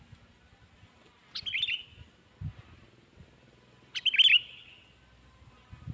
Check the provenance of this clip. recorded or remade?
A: recorded